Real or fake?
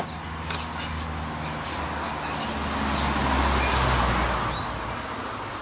real